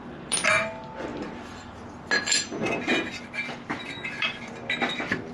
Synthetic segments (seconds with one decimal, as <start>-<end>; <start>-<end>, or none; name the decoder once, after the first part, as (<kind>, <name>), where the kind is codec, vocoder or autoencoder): none